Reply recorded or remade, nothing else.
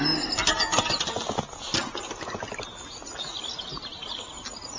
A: recorded